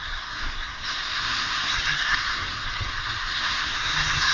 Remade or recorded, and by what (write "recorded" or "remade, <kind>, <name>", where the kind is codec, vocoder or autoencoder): remade, codec, SNAC